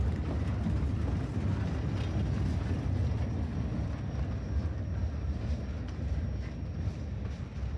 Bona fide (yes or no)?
yes